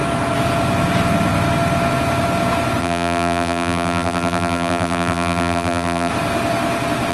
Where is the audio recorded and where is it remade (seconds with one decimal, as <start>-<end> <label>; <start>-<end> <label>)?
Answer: 0.0-2.8 recorded; 2.8-6.1 remade; 6.1-7.1 recorded